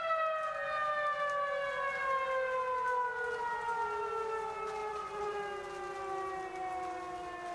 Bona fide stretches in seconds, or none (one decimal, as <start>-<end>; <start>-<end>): 0.0-4.8; 5.4-7.5